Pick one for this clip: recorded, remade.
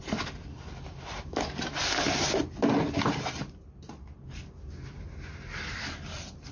recorded